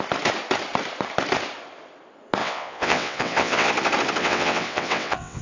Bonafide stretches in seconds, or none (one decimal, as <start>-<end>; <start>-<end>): 0.0-2.4; 3.7-4.2